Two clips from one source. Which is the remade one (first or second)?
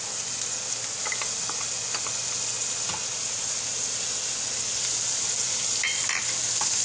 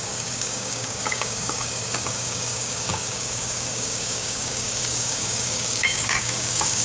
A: second